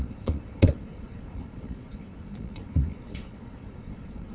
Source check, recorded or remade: remade